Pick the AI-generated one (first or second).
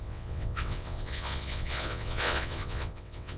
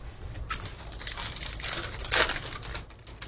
first